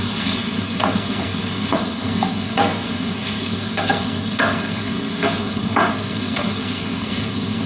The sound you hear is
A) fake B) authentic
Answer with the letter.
A